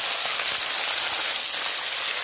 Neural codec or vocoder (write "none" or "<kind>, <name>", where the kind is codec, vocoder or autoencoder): none